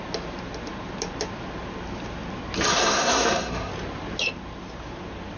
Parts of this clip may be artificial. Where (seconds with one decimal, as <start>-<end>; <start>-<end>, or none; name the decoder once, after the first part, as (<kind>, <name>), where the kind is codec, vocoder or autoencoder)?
2.7-3.7 (codec, SNAC)